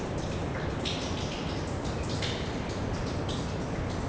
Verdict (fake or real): real